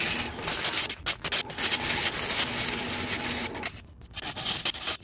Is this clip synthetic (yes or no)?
no